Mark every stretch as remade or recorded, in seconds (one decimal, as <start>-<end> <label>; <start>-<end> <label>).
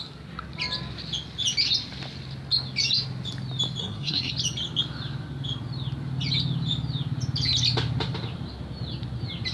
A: 0.0-3.8 recorded; 3.8-4.3 remade; 4.3-9.5 recorded